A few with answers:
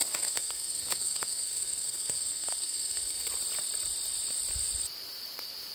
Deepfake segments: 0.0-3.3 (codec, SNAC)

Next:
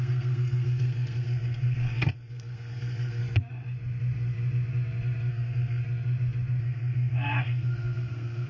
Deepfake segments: 0.0-3.2 (codec, SNAC); 5.3-5.8; 6.6-8.5

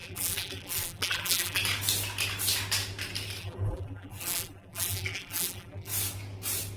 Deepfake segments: 0.0-1.6 (vocoder, BigVGAN v2); 3.4-5.9

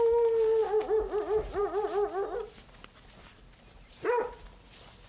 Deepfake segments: none